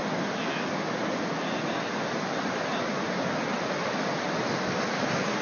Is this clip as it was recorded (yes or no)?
yes